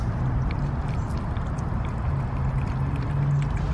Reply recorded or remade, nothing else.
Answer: recorded